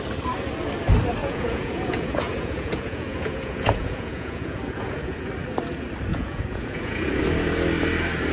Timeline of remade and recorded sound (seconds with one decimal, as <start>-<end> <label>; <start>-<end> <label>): 0.0-1.2 recorded; 1.2-5.3 remade; 5.3-6.1 recorded; 6.1-7.2 remade; 7.2-8.3 recorded